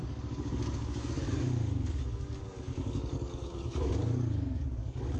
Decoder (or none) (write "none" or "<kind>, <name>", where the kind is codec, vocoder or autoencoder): codec, DAC